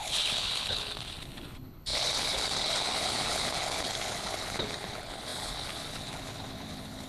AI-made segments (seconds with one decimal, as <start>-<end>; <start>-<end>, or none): 0.0-7.1